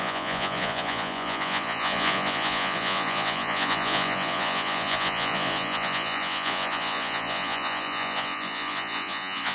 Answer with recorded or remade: remade